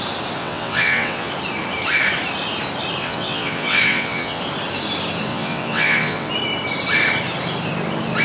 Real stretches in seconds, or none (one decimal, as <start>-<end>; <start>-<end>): 0.0-0.4; 1.3-3.0; 4.4-5.3; 6.3-8.2